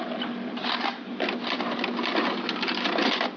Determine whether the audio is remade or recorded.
recorded